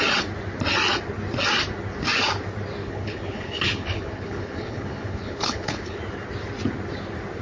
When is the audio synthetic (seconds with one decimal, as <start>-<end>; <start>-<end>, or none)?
2.8-6.0